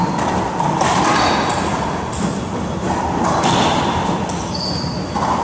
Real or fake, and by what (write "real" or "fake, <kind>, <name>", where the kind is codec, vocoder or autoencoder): fake, vocoder, BigVGAN v2